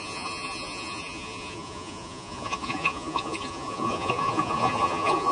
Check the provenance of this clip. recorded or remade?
remade